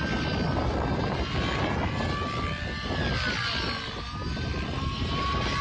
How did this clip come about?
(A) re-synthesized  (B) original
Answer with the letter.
B